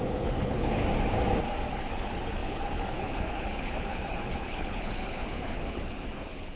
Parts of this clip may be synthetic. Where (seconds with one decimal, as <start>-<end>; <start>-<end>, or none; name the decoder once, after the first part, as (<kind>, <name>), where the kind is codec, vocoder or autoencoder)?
0.0-0.8 (codec, HILCodec); 1.7-6.6